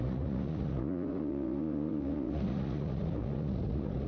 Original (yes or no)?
no